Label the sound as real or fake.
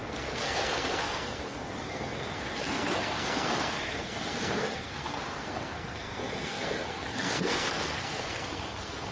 fake